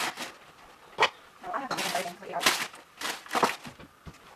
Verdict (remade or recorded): recorded